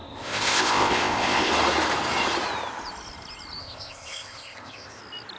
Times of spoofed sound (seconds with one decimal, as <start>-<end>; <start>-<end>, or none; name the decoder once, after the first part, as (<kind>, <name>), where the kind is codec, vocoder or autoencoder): 0.0-1.5 (codec, ZipCodec); 3.6-5.0